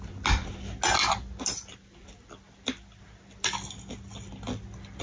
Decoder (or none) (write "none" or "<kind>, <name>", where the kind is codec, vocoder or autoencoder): none